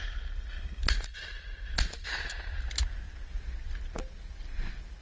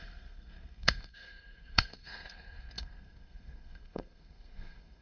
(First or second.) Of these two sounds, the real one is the first